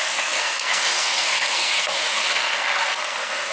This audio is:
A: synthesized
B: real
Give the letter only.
A